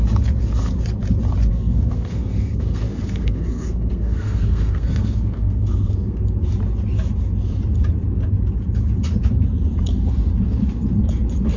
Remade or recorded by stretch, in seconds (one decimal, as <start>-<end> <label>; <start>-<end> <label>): 0.0-1.5 recorded; 1.5-6.2 remade; 6.2-11.6 recorded